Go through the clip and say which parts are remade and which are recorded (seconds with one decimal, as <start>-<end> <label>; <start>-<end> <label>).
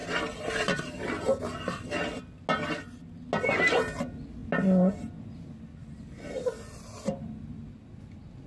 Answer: 0.0-8.5 recorded